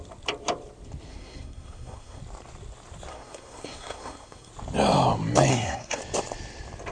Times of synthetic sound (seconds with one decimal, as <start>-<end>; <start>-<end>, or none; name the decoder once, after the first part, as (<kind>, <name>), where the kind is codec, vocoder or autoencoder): 1.1-2.2 (codec, SNAC); 3.1-4.5; 5.5-6.0